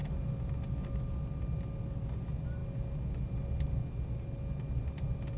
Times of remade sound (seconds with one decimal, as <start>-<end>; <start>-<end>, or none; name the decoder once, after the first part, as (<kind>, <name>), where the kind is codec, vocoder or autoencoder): none